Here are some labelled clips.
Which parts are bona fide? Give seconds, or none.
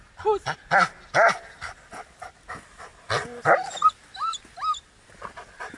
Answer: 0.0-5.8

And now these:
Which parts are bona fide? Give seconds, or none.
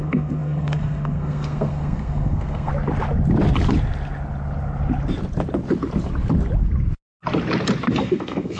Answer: 2.7-7.9